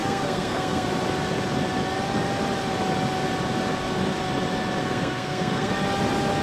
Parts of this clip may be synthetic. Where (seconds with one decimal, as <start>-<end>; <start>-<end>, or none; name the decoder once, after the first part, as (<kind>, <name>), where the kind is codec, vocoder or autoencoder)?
0.0-0.9 (codec, SNAC); 4.8-5.7